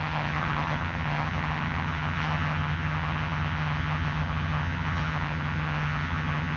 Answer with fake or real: fake